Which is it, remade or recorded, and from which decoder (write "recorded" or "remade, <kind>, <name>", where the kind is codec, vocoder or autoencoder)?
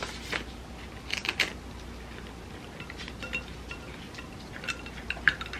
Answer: recorded